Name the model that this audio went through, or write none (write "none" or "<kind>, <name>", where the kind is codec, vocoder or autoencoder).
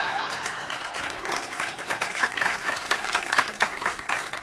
codec, SNAC